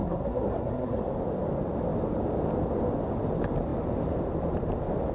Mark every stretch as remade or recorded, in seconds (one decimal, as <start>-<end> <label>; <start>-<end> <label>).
0.0-1.1 remade; 1.1-5.1 recorded